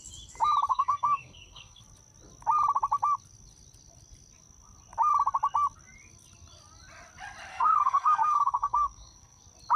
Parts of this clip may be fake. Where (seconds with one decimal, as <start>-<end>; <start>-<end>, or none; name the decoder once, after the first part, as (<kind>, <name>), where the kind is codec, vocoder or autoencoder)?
0.7-1.8 (codec, SNAC); 7.5-9.4